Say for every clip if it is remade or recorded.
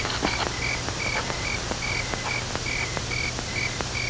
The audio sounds recorded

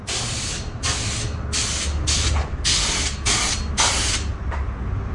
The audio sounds recorded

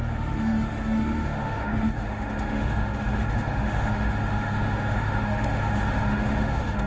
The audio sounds remade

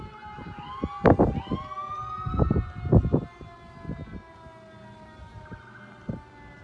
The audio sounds recorded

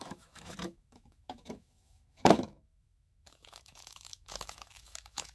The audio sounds remade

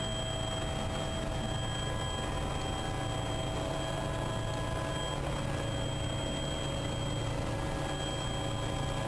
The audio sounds recorded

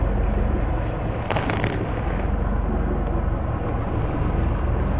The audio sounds recorded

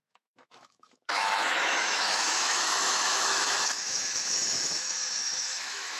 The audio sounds remade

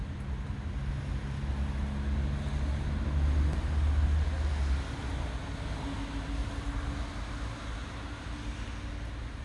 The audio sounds recorded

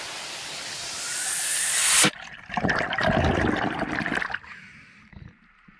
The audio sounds recorded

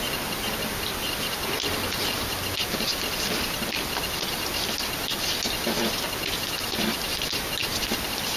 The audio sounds recorded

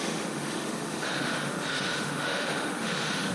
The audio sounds remade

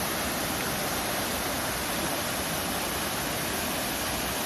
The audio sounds recorded